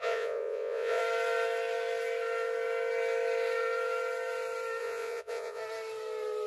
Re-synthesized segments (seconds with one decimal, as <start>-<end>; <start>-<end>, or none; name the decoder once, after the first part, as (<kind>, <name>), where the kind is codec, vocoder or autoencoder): 0.0-1.0 (vocoder, Vocos); 4.8-5.6